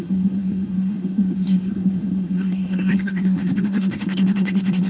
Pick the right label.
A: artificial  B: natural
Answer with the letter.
A